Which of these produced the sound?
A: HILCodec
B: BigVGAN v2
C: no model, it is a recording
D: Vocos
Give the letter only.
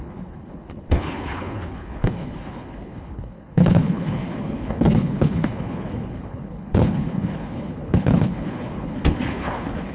A